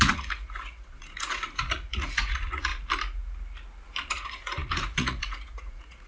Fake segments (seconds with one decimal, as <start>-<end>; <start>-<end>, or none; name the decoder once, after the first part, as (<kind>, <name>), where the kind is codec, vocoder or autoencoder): 0.0-2.7 (vocoder, Vocos); 4.1-6.1